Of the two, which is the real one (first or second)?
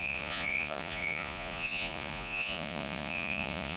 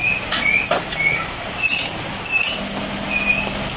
second